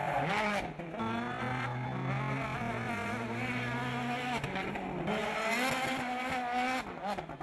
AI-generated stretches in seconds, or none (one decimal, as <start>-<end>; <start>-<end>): none